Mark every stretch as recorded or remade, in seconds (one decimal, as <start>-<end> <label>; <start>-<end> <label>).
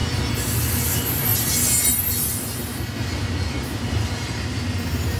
0.0-5.2 recorded